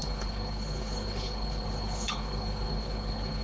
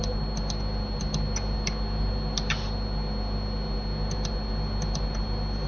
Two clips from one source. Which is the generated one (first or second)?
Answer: first